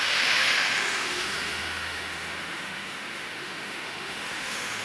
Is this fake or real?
fake